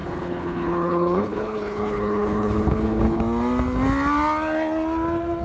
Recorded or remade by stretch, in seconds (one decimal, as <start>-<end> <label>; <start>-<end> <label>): 0.0-3.2 remade; 3.2-5.4 recorded